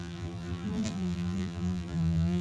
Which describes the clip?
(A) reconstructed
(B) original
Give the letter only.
A